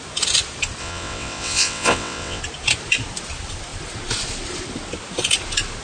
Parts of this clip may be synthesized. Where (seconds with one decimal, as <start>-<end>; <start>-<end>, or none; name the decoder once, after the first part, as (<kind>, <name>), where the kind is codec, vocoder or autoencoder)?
0.8-2.4 (vocoder, WaveNeXt)